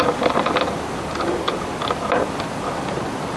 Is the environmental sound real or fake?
real